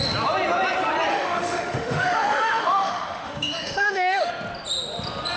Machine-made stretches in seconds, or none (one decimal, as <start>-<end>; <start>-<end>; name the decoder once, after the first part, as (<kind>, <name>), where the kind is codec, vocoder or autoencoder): 1.1-4.3 (autoencoder, DAC-VAE)